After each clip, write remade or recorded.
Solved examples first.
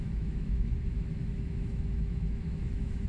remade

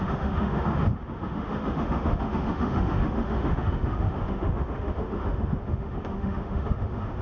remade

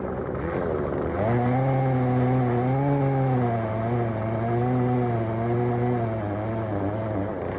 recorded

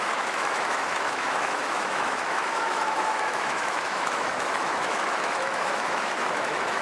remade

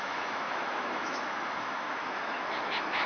remade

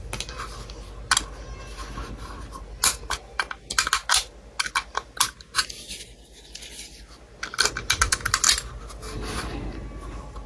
recorded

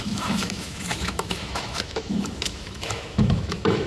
remade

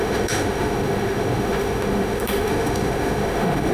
remade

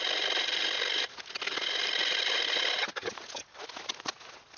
recorded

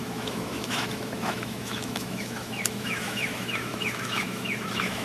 remade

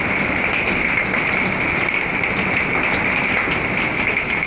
recorded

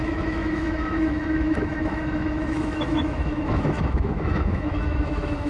remade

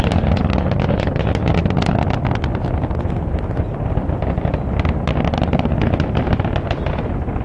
recorded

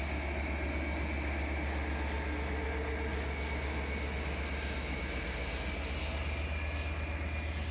recorded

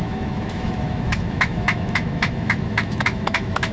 remade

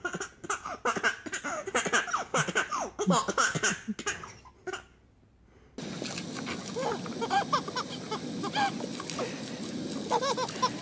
recorded